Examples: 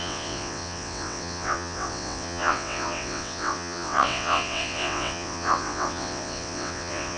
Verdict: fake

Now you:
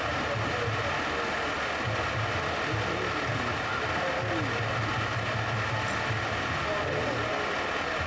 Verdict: real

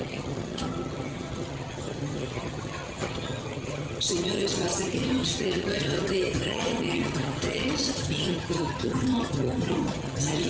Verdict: fake